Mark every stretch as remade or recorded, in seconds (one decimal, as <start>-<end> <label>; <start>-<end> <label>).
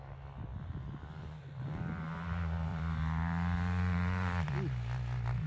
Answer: 0.0-2.7 recorded; 2.7-4.5 remade; 4.5-5.5 recorded